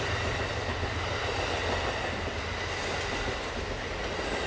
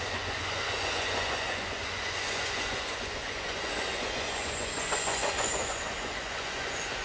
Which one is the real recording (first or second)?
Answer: first